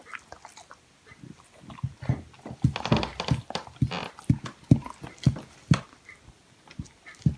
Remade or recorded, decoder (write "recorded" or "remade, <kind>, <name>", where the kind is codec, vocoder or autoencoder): recorded